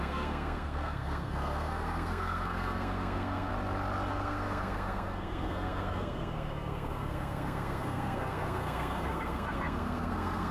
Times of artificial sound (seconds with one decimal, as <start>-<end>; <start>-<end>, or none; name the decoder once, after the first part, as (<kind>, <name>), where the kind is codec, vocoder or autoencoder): 0.0-3.5 (codec, SNAC); 4.1-10.5